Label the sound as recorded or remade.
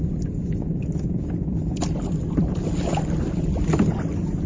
recorded